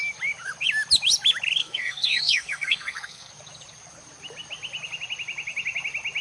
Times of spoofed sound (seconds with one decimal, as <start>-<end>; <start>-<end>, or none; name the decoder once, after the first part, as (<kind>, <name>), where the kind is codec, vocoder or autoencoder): 1.6-3.3 (codec, SNAC)